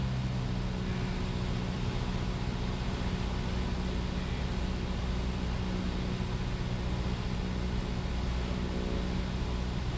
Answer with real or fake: real